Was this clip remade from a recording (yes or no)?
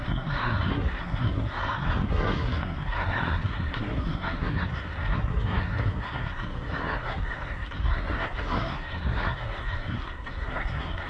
yes